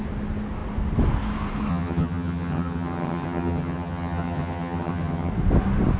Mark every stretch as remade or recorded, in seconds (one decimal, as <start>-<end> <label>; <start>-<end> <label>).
0.0-1.7 recorded; 1.7-5.3 remade; 5.3-6.0 recorded